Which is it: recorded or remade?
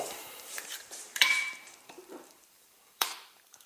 remade